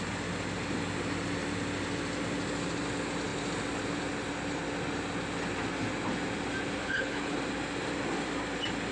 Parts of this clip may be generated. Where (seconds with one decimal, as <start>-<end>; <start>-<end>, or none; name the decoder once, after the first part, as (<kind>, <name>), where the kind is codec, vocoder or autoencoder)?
6.8-7.4 (codec, HILCodec)